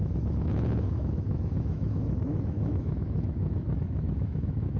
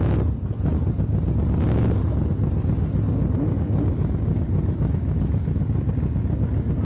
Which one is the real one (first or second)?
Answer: second